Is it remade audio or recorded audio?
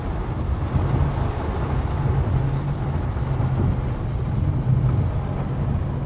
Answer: recorded